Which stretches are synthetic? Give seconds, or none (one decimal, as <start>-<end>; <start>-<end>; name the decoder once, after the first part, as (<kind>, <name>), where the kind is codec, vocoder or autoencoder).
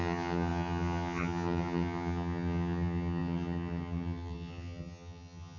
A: 0.0-5.6 (vocoder, HiFi-GAN)